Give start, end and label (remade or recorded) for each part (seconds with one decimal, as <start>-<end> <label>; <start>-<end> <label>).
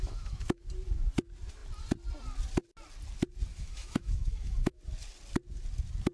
0.0-0.6 remade; 0.6-3.5 recorded; 3.5-4.8 remade; 4.8-6.1 recorded